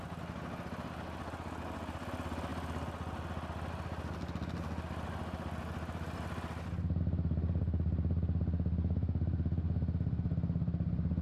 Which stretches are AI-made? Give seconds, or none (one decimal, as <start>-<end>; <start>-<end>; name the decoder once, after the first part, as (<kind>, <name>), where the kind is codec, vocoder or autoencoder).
none